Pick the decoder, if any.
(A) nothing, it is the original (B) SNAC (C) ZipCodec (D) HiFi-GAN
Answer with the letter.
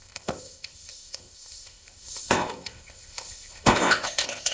C